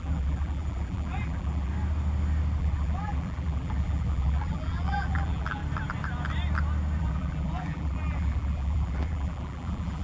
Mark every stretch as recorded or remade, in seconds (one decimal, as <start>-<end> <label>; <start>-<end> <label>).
0.0-1.7 remade; 1.7-2.6 recorded; 2.6-5.6 remade; 5.6-7.0 recorded; 7.0-10.0 remade